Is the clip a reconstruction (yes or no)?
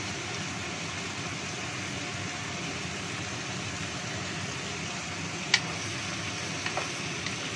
no